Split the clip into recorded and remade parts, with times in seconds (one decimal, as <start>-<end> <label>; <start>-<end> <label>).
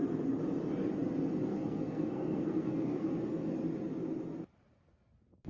0.0-1.5 recorded; 1.5-3.1 remade; 3.1-5.5 recorded